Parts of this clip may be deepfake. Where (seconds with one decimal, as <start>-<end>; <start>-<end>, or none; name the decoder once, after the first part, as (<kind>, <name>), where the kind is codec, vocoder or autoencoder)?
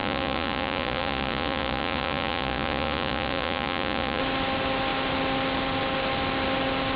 0.0-4.2 (vocoder, Vocos)